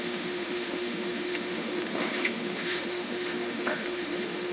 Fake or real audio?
fake